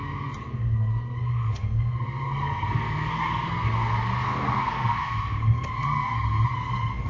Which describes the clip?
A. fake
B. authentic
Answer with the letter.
A